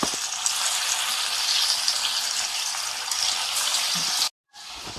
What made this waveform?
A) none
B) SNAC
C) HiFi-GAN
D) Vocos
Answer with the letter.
A